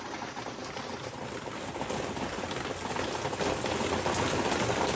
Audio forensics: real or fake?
real